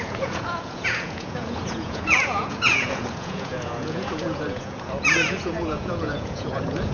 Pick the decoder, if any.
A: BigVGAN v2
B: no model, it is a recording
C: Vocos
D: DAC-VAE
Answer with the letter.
C